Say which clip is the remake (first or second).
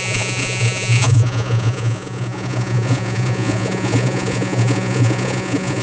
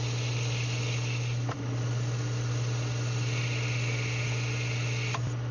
first